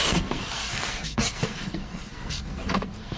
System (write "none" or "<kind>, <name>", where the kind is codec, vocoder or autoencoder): codec, SNAC